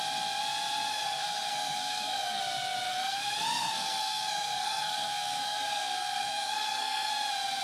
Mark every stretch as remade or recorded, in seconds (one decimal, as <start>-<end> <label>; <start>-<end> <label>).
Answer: 0.0-0.9 recorded; 0.9-2.4 remade; 2.4-2.9 recorded; 2.9-7.1 remade; 7.1-7.6 recorded